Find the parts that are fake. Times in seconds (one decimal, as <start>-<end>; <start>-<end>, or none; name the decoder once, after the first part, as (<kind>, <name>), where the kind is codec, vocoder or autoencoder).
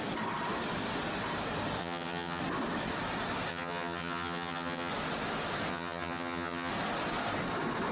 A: 1.8-2.4 (vocoder, HiFi-GAN); 3.5-4.9; 5.7-6.7